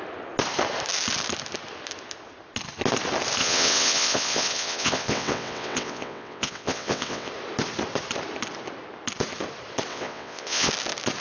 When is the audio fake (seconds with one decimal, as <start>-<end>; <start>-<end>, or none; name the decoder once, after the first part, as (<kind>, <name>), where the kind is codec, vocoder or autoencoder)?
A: 3.4-7.3 (vocoder, WaveNeXt); 9.9-10.7